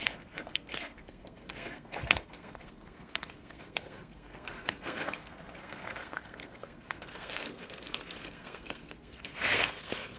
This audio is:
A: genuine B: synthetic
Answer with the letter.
B